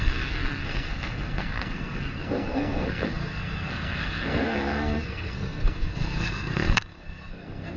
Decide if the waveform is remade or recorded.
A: remade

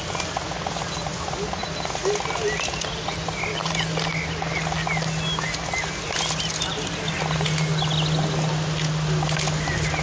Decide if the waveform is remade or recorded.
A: recorded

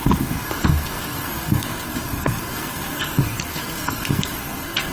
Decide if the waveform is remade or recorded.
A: remade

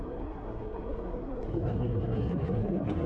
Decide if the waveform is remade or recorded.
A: remade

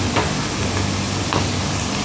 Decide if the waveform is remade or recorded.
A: recorded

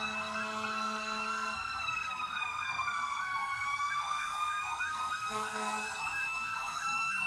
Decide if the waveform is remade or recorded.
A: remade